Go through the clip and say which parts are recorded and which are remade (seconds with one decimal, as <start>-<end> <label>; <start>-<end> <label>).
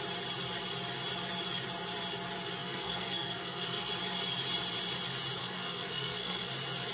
0.0-2.6 recorded; 2.6-3.9 remade; 3.9-5.4 recorded; 5.4-6.5 remade; 6.5-6.9 recorded